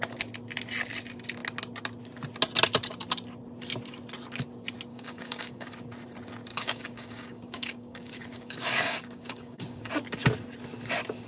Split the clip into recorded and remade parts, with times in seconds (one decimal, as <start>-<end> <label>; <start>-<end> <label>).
0.0-4.9 recorded; 4.9-5.7 remade; 5.7-6.5 recorded; 6.5-9.9 remade; 9.9-11.3 recorded